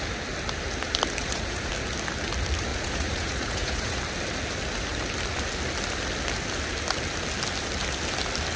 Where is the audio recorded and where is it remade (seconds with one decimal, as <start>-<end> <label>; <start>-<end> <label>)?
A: 0.0-1.2 recorded; 1.2-1.7 remade; 1.7-2.7 recorded; 2.7-4.0 remade; 4.0-8.6 recorded